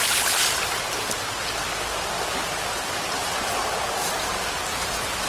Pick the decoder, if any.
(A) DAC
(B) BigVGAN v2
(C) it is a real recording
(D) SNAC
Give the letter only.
C